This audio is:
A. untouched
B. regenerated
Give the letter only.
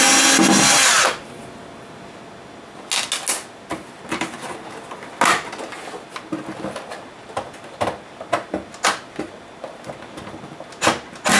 A